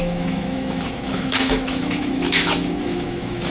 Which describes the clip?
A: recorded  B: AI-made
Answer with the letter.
B